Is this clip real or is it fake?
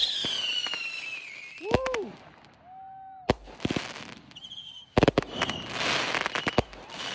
real